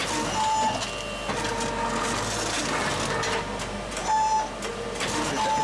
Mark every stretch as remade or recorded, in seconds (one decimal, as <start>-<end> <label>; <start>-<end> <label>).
0.0-5.6 recorded